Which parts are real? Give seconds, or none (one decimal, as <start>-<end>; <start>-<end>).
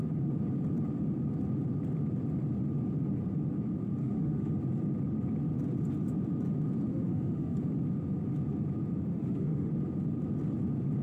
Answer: 0.0-4.0; 4.5-6.9; 7.6-9.1; 9.7-11.0